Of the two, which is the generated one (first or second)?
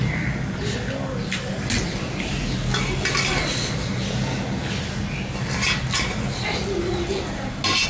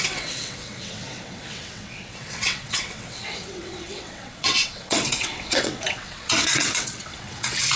second